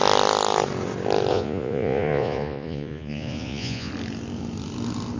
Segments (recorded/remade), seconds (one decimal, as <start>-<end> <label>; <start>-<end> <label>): 0.0-1.3 recorded; 1.3-3.9 remade; 3.9-5.2 recorded